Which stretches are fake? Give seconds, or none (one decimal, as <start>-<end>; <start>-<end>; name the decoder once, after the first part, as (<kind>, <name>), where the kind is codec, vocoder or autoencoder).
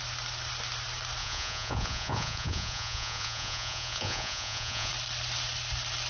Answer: 1.2-4.9 (vocoder, Vocos)